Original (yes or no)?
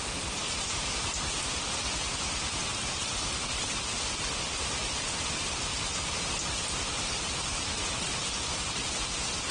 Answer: yes